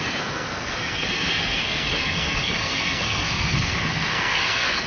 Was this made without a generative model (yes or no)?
no